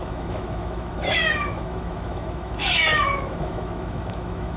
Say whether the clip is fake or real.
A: fake